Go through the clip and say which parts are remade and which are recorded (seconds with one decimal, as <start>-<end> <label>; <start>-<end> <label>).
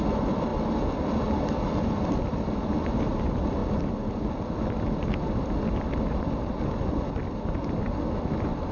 0.0-8.7 recorded